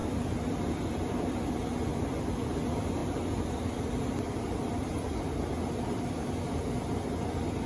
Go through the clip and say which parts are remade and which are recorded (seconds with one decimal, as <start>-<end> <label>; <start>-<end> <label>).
0.0-1.3 remade; 1.3-1.9 recorded; 1.9-2.5 remade; 2.5-3.0 recorded; 3.0-6.3 remade; 6.3-7.7 recorded